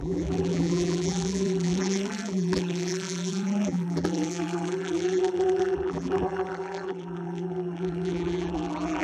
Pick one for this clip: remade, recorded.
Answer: remade